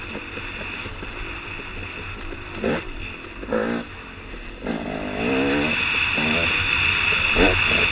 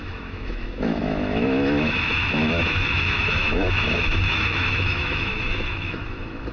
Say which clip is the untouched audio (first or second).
first